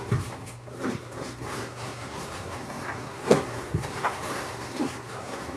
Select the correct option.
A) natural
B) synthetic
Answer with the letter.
B